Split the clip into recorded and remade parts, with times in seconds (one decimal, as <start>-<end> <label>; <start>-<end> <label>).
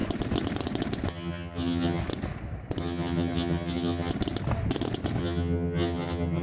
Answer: 0.0-1.1 recorded; 1.1-2.0 remade; 2.0-2.8 recorded; 2.8-4.1 remade; 4.1-5.2 recorded; 5.2-6.4 remade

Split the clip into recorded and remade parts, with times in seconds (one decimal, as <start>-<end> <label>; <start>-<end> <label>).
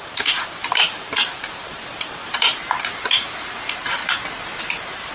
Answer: 0.0-4.0 remade; 4.0-4.6 recorded; 4.6-5.1 remade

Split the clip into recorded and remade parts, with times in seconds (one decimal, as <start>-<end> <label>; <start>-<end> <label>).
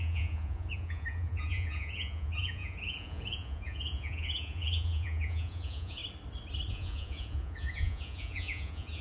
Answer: 0.0-6.0 remade; 6.0-6.7 recorded; 6.7-9.0 remade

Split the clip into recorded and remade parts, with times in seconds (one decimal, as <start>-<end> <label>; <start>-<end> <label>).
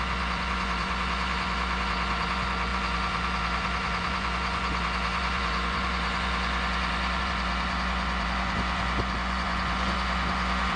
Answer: 0.0-10.8 remade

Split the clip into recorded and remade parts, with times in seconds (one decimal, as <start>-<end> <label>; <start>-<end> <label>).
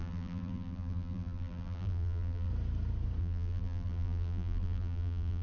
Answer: 0.0-2.5 remade; 2.5-3.2 recorded; 3.2-5.4 remade